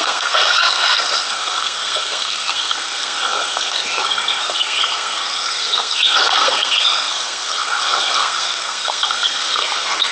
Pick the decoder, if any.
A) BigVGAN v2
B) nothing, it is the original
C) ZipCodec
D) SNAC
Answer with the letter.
D